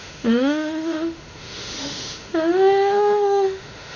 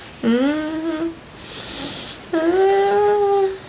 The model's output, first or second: first